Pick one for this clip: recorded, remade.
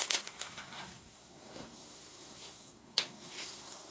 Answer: remade